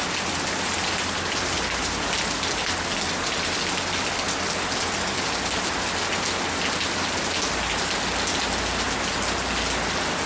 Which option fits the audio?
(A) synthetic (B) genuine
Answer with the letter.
B